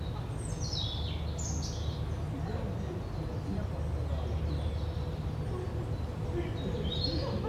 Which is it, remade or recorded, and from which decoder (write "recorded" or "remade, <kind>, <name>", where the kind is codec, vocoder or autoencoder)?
recorded